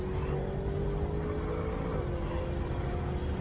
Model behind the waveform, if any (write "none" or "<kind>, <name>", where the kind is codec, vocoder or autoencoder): none